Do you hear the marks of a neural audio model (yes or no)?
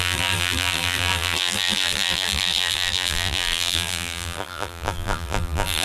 yes